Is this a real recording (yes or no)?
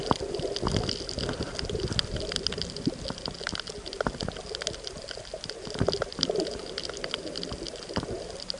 yes